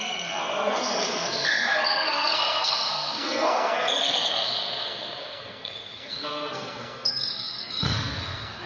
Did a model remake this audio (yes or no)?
yes